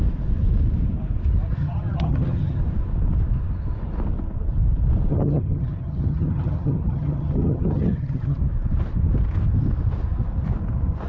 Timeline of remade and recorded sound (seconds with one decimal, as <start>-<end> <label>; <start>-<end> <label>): 0.0-1.5 recorded; 1.5-2.6 remade; 2.6-5.1 recorded; 5.1-8.4 remade; 8.4-11.1 recorded